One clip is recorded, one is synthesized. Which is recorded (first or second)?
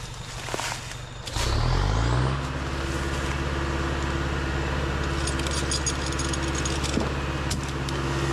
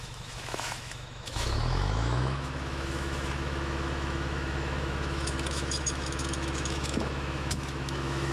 first